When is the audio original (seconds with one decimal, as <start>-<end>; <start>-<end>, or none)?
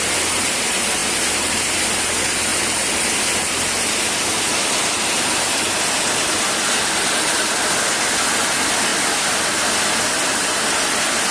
0.0-11.3